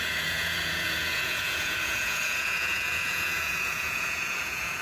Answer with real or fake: fake